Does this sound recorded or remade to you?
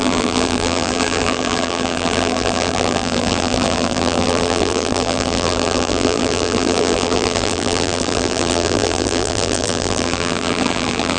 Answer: remade